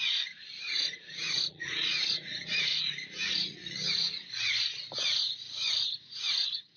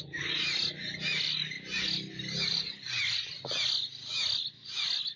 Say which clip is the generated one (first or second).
first